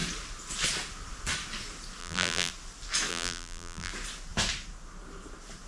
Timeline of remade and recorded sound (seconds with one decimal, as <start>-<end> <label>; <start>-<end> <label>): 0.0-2.0 recorded; 2.0-2.5 remade; 2.5-3.1 recorded; 3.1-3.9 remade; 3.9-5.7 recorded